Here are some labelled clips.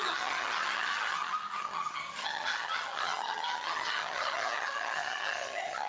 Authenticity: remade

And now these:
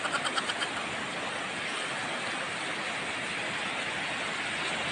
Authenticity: recorded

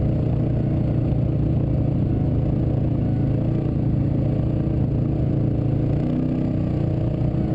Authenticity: recorded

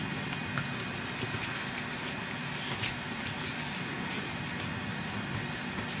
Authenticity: recorded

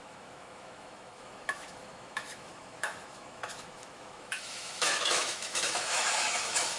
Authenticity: remade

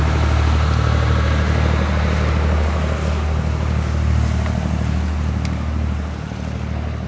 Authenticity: recorded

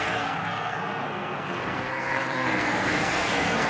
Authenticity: remade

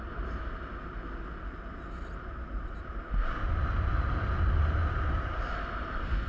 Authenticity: recorded